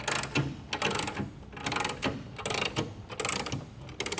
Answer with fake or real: real